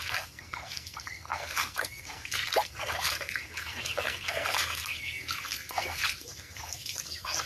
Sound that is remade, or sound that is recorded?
remade